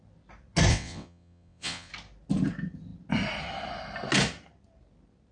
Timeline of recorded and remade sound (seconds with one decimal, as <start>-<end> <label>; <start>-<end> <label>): 0.0-0.7 recorded; 0.7-1.9 remade; 1.9-5.3 recorded